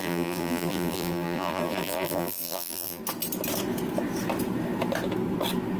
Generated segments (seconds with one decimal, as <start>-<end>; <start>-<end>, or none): 0.0-3.0